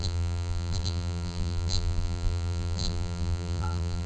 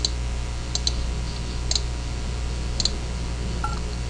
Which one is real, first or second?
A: second